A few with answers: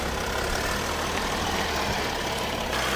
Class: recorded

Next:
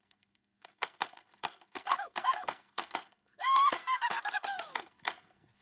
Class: remade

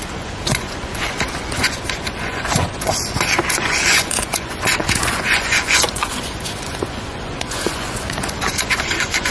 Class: remade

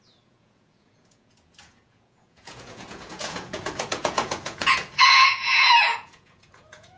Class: remade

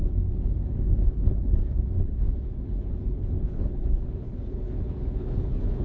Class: remade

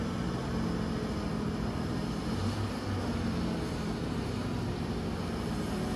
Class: recorded